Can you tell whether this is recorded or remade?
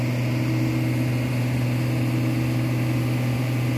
remade